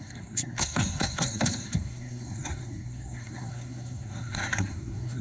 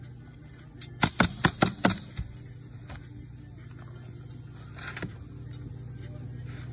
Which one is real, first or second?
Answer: second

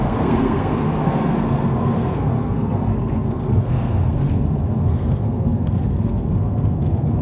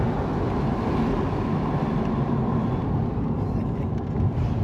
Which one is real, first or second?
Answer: second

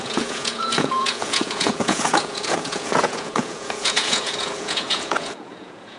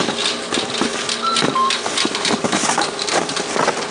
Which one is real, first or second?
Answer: second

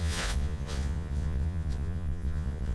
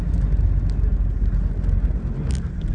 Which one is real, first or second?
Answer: second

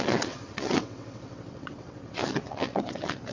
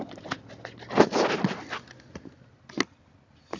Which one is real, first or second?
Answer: second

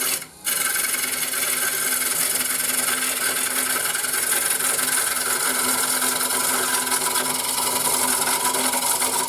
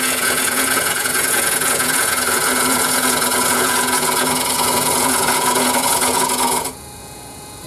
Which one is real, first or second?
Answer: first